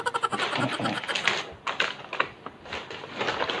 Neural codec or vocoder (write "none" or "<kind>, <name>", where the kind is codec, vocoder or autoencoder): none